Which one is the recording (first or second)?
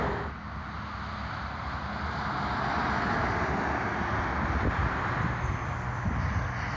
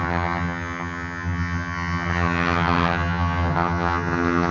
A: first